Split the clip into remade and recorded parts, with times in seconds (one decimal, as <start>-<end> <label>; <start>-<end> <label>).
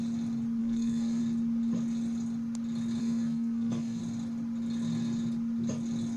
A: 0.0-0.6 recorded; 0.6-1.2 remade; 1.2-3.0 recorded; 3.0-4.0 remade; 4.0-6.2 recorded